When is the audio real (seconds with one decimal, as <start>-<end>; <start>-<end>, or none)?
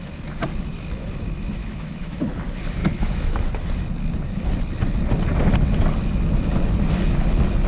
0.0-1.6; 2.2-2.8; 3.5-7.7